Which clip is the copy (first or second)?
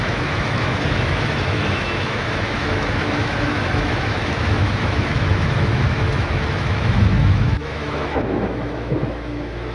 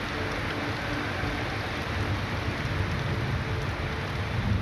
first